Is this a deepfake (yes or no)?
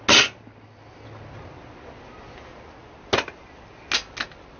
no